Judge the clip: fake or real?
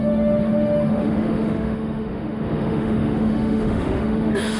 fake